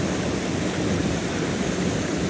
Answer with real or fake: real